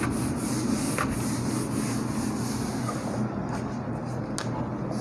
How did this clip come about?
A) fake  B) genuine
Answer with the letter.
B